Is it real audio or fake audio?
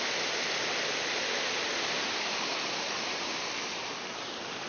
real